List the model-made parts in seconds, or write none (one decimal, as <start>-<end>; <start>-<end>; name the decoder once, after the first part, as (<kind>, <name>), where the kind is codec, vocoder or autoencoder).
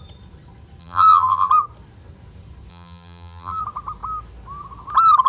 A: 0.8-1.5 (vocoder, BigVGAN v2); 2.7-3.6